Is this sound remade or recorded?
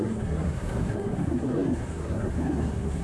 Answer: remade